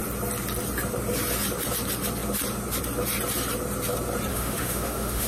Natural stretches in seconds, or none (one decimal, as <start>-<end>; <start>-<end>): 0.0-4.3

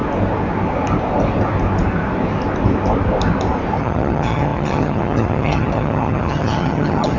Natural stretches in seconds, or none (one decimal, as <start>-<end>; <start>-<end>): 0.0-3.8

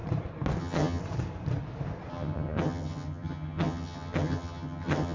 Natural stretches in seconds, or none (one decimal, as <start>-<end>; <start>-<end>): 0.0-0.6; 1.0-2.1